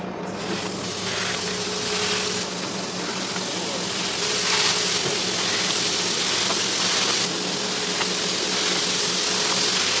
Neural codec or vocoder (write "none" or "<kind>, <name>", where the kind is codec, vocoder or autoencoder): none